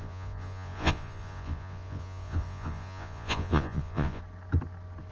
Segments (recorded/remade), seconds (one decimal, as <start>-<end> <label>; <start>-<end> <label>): 0.0-4.2 remade; 4.2-5.1 recorded